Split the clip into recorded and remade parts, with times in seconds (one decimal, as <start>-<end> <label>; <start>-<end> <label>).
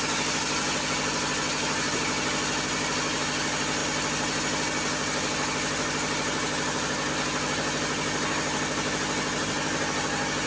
0.0-10.5 recorded